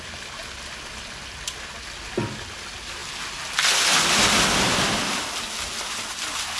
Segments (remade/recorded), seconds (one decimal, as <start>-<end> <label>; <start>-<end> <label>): 0.0-6.6 recorded